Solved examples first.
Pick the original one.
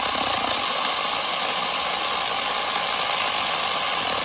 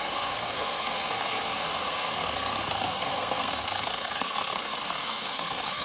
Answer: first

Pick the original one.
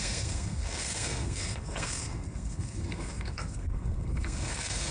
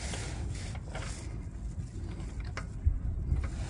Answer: second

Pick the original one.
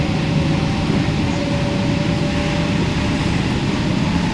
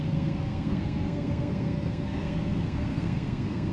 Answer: first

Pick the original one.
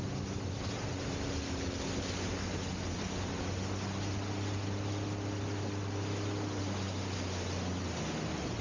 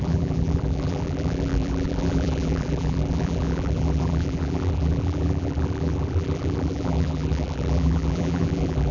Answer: first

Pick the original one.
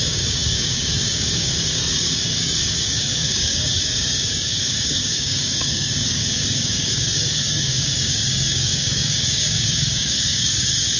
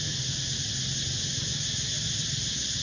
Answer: second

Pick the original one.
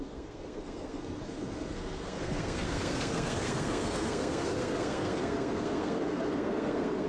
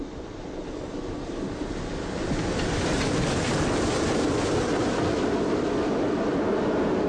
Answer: second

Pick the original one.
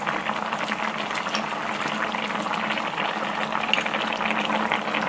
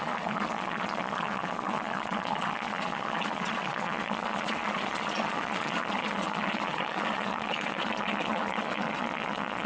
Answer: first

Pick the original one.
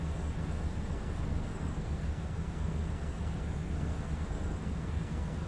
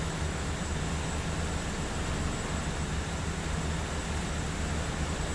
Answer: second